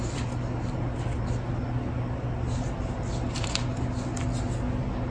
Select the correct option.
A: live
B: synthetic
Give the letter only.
A